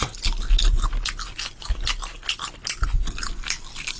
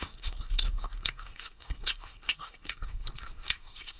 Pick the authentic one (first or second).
first